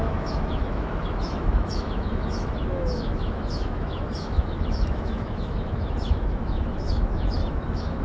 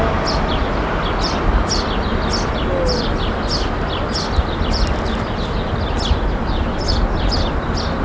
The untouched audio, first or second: second